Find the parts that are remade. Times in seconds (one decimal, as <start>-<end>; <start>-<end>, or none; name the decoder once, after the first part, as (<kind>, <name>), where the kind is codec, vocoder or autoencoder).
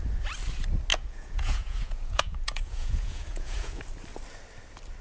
0.9-3.8 (vocoder, Vocos)